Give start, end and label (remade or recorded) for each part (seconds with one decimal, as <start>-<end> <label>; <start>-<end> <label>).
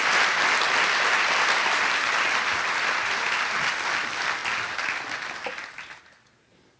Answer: 0.0-6.8 recorded